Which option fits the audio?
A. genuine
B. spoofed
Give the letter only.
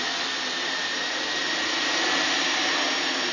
B